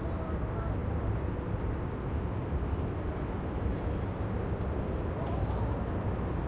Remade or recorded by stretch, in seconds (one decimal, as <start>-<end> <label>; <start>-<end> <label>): 0.0-6.5 recorded

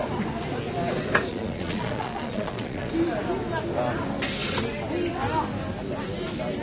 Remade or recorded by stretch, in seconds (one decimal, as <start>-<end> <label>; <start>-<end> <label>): 0.0-1.3 recorded; 1.3-2.9 remade; 2.9-6.6 recorded

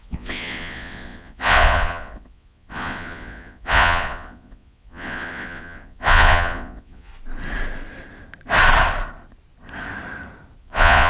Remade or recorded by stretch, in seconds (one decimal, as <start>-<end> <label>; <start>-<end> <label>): 0.0-7.1 remade; 7.1-10.6 recorded; 10.6-11.1 remade

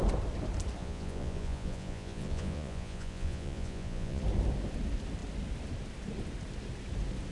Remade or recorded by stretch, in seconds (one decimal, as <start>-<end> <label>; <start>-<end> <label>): 0.0-0.8 recorded; 0.8-4.2 remade; 4.2-7.3 recorded

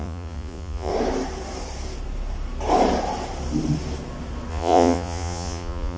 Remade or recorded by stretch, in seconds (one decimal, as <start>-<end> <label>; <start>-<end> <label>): 0.0-0.9 remade; 0.9-4.5 recorded; 4.5-6.0 remade

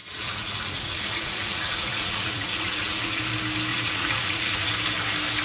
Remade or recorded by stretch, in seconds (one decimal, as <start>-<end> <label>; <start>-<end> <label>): 0.0-3.2 remade; 3.2-3.7 recorded; 3.7-4.7 remade; 4.7-5.4 recorded

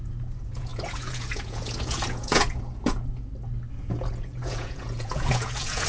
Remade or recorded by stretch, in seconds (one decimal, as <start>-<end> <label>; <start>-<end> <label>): 0.0-3.3 remade; 3.3-3.8 recorded; 3.8-5.9 remade